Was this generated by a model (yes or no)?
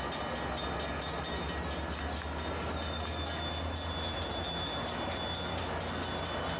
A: no